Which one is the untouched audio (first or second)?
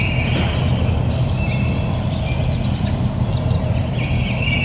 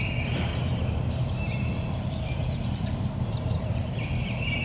first